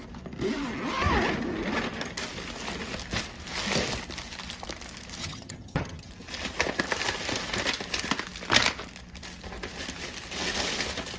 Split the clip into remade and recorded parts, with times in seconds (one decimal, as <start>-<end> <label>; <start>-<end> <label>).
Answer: 0.0-5.2 recorded; 5.2-6.1 remade; 6.1-11.2 recorded